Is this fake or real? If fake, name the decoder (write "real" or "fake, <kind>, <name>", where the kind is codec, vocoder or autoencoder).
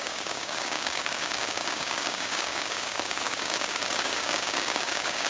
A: fake, codec, DAC